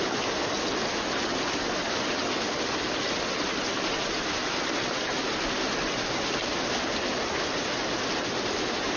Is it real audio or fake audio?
real